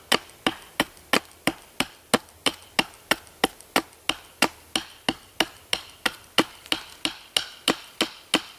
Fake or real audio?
real